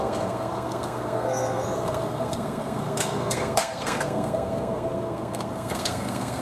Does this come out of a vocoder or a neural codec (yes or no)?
yes